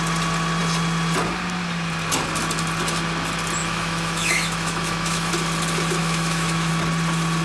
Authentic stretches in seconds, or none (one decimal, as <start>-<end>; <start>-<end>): 0.0-3.6; 5.3-6.0; 6.7-7.4